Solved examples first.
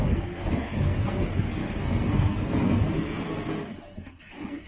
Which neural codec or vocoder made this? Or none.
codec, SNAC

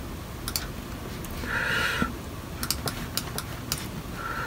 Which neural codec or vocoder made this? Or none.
none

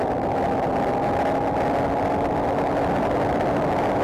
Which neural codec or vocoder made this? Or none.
none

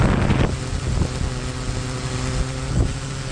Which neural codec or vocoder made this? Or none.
none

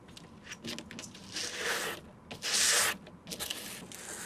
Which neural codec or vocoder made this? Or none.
none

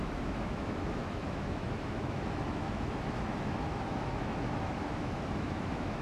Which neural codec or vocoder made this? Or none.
autoencoder, DAC-VAE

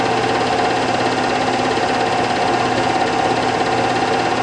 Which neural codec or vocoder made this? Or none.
none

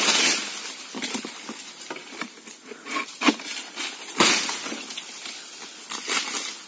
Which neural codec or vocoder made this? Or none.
none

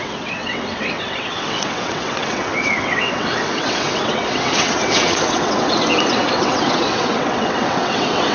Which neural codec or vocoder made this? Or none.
vocoder, WaveNeXt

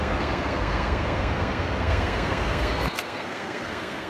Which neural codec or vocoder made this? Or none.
codec, SNAC